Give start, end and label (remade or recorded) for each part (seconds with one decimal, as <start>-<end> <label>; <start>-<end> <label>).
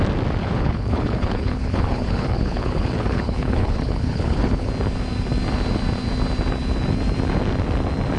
0.0-0.4 recorded; 0.4-4.7 remade; 4.7-8.2 recorded